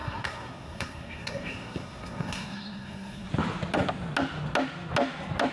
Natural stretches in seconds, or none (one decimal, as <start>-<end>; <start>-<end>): 3.3-5.5